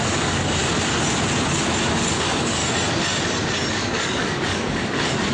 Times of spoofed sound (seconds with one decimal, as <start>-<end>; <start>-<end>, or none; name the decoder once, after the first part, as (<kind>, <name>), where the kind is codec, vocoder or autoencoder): 0.0-0.6 (codec, DAC); 2.1-2.6; 3.7-5.3